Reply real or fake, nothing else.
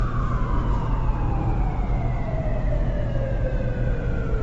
real